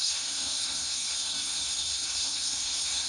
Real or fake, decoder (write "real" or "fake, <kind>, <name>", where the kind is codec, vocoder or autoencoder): fake, codec, SNAC